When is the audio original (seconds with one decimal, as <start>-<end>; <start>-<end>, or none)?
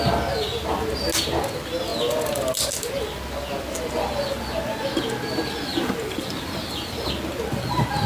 0.0-5.7; 7.1-8.1